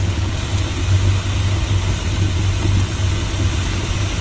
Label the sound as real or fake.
real